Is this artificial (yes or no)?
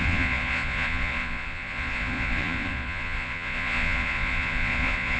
yes